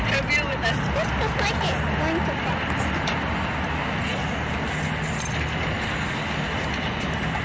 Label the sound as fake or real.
real